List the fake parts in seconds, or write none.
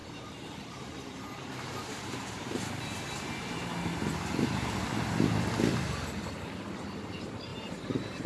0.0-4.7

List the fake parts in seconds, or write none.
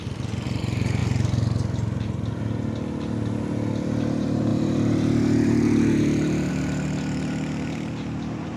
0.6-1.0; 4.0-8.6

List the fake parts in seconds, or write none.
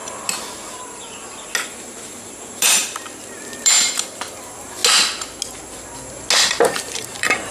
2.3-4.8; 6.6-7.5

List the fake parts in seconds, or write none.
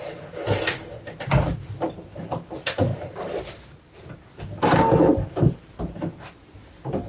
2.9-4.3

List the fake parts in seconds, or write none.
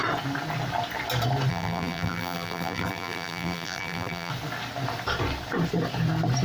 1.5-4.3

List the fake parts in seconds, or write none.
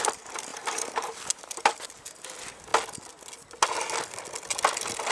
0.5-1.4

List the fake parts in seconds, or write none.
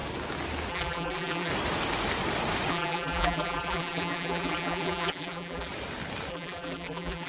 0.7-1.5; 2.7-5.7; 6.3-7.3